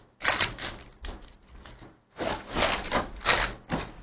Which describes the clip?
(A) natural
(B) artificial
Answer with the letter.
A